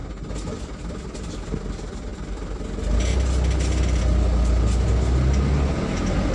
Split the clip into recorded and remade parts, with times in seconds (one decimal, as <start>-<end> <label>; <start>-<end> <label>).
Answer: 0.0-6.3 recorded

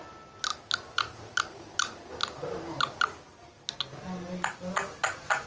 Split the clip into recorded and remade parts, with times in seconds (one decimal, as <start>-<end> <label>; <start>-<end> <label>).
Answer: 0.0-5.5 recorded

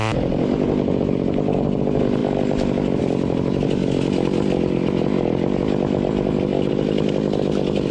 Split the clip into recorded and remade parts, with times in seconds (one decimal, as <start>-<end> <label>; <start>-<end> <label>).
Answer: 0.0-7.9 recorded